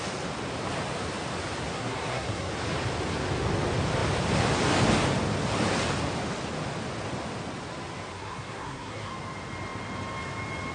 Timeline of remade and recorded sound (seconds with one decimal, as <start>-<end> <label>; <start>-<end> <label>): 0.0-1.7 recorded; 1.7-2.5 remade; 2.5-8.1 recorded; 8.1-9.1 remade; 9.1-10.7 recorded